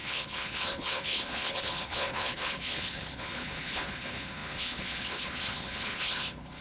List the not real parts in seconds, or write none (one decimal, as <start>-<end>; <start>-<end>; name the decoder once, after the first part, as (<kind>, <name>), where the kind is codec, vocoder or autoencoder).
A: 0.0-6.6 (codec, HILCodec)